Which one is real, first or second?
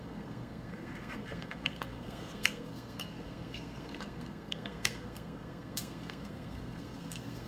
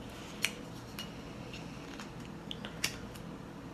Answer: second